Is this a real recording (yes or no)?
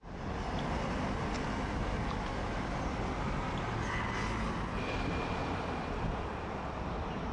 yes